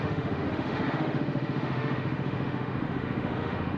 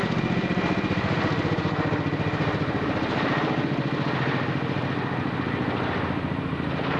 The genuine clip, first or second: second